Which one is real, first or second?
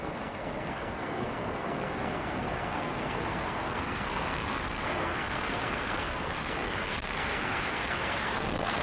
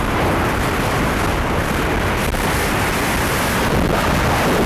second